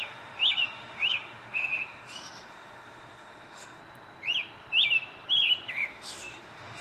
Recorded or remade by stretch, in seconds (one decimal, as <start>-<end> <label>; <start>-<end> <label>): 0.0-3.8 remade; 3.8-5.7 recorded; 5.7-6.8 remade